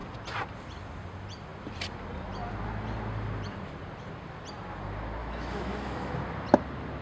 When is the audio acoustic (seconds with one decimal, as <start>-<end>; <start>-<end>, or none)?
0.0-5.2; 6.1-7.0